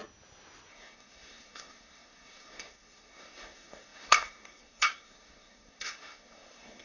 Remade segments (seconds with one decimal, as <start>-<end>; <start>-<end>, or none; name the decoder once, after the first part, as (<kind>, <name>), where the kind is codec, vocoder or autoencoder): 0.7-6.8 (codec, SNAC)